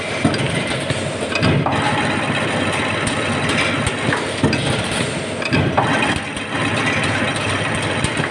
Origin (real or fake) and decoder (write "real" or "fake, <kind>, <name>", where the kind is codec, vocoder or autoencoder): real